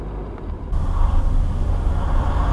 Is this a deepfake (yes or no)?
no